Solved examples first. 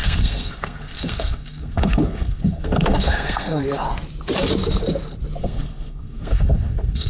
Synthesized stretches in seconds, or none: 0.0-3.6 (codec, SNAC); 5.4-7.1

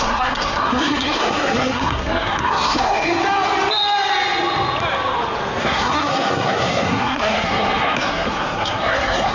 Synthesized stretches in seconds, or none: 0.0-3.2 (codec, SNAC); 5.6-9.3

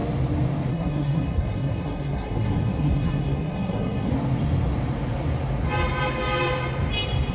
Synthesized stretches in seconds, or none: 0.7-4.1 (codec, SNAC)